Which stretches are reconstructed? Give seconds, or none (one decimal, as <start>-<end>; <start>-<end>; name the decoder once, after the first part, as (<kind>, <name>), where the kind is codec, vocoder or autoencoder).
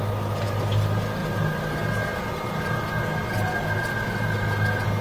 none